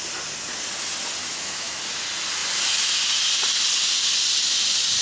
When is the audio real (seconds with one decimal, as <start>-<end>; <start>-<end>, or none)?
0.0-1.2; 1.8-5.0